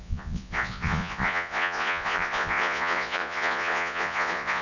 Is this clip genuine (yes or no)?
no